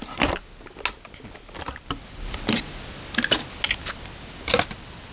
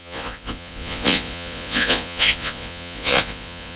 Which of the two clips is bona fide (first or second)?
first